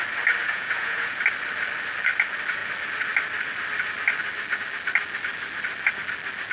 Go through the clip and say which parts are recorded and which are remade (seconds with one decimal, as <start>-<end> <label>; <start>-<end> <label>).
0.0-0.4 recorded; 0.4-1.2 remade; 1.2-6.5 recorded